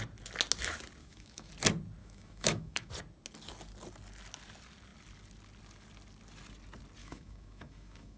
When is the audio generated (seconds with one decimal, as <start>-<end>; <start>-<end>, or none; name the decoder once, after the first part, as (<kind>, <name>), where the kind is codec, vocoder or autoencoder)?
1.0-1.5 (autoencoder, DAC-VAE); 2.0-2.9; 7.0-8.2